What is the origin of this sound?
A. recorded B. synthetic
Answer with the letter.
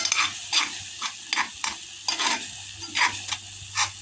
A